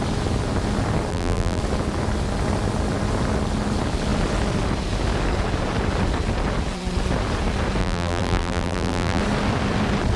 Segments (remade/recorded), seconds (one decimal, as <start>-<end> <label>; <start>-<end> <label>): 0.0-1.1 recorded; 1.1-1.6 remade; 1.6-7.8 recorded; 7.8-9.2 remade; 9.2-10.2 recorded